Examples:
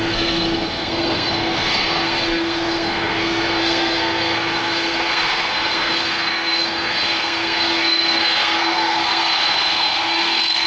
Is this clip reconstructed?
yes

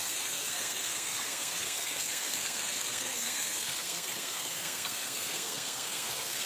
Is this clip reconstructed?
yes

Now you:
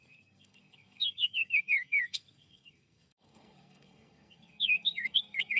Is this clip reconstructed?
yes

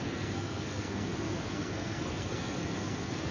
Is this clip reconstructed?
yes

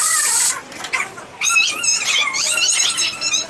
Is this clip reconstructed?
no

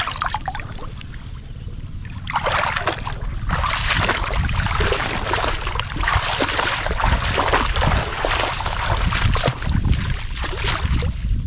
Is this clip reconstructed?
no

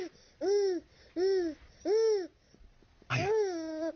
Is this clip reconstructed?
no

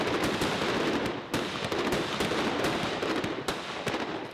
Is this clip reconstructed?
no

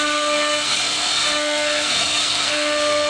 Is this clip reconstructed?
yes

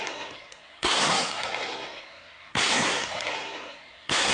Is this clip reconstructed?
yes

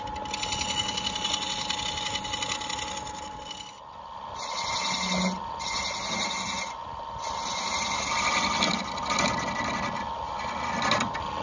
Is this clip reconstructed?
no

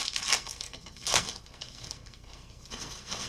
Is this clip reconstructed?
yes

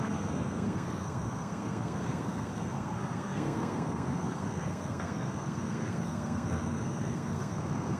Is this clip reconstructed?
yes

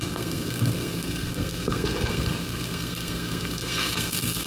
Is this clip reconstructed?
yes